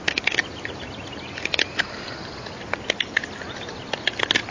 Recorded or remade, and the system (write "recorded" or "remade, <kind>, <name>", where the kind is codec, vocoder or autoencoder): recorded